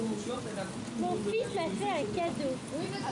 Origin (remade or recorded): recorded